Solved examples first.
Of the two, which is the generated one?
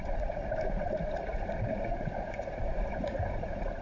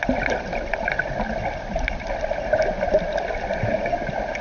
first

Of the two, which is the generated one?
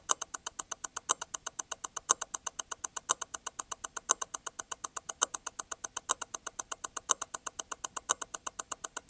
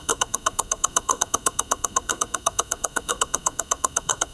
second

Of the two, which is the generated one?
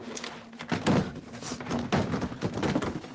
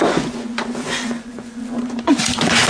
second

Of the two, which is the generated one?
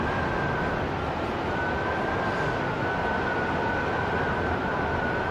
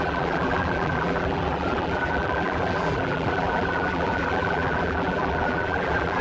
second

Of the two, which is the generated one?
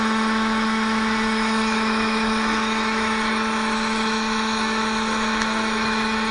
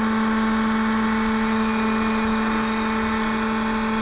first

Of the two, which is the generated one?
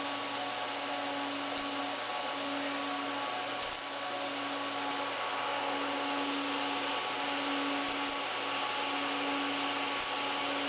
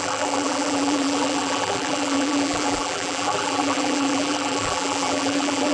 second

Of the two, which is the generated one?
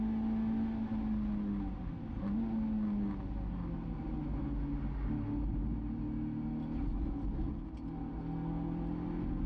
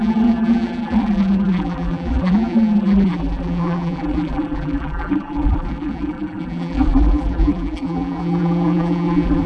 second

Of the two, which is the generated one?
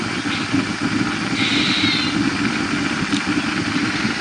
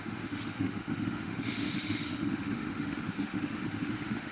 second